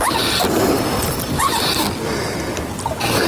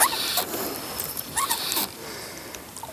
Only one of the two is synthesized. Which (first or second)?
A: second